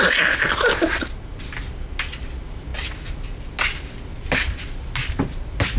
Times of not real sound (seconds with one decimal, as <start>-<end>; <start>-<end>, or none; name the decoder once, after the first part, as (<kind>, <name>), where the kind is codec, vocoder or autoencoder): none